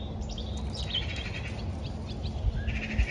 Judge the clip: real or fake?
real